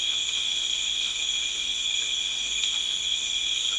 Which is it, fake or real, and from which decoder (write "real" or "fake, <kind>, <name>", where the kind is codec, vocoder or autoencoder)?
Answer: fake, autoencoder, DAC-VAE